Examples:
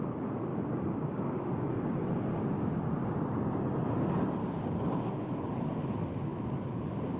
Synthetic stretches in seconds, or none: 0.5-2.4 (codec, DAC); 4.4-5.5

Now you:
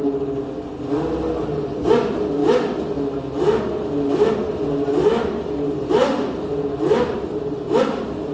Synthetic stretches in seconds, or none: none

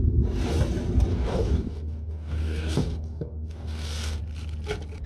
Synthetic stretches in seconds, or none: 1.1-4.2 (codec, DAC)

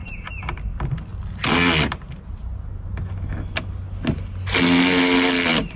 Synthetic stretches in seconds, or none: none

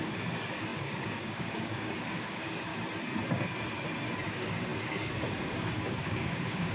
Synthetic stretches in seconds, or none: 0.0-2.7 (codec, DAC); 4.3-6.7

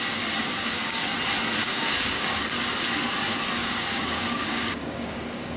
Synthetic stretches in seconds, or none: 1.6-2.4 (codec, DAC); 3.6-5.6